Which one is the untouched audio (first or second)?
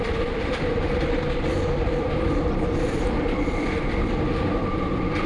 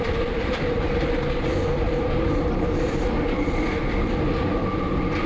second